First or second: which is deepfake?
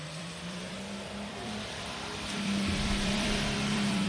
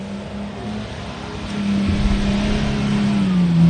first